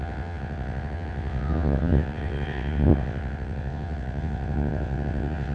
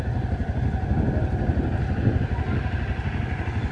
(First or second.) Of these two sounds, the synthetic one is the first